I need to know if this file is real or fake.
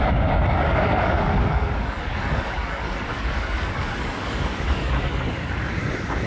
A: fake